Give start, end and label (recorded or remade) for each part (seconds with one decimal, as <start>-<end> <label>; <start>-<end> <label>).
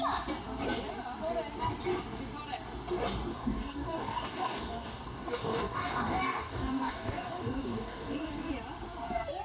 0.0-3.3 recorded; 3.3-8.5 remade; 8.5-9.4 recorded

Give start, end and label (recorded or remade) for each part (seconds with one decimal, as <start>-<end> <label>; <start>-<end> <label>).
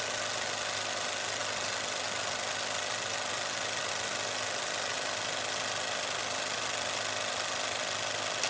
0.0-8.5 recorded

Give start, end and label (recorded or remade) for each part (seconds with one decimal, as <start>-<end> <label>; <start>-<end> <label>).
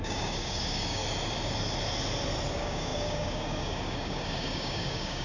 0.0-1.0 remade; 1.0-2.5 recorded; 2.5-5.2 remade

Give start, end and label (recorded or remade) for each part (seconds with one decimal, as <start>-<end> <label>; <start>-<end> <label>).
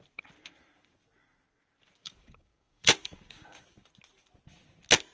0.0-2.0 recorded; 2.0-3.9 remade; 3.9-5.1 recorded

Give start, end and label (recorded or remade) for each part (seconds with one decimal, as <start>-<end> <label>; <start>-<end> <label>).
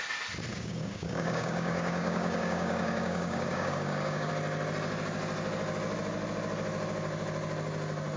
0.0-0.5 recorded; 0.5-4.3 remade; 4.3-8.2 recorded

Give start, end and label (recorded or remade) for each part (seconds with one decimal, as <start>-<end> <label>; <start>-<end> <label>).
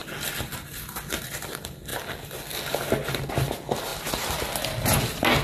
0.0-5.4 recorded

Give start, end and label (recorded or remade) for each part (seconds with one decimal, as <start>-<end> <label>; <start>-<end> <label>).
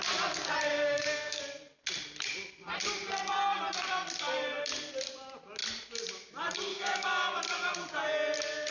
0.0-0.7 recorded; 0.7-1.4 remade; 1.4-6.7 recorded; 6.7-7.4 remade; 7.4-8.7 recorded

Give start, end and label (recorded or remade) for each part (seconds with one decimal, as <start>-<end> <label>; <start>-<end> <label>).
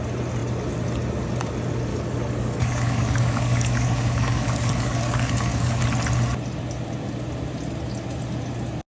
0.0-1.9 recorded; 1.9-5.8 remade; 5.8-9.0 recorded